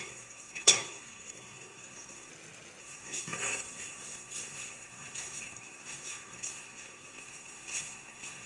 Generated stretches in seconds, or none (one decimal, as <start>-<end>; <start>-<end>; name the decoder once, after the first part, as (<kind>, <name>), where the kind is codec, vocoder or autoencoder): 0.0-2.3 (codec, SNAC); 2.8-8.5